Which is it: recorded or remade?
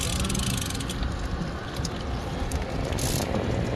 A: recorded